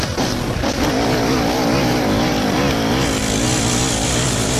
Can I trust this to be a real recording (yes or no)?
yes